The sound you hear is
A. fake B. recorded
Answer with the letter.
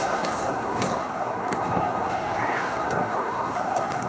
A